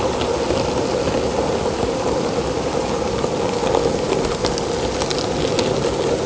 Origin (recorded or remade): recorded